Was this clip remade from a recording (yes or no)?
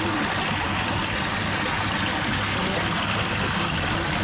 no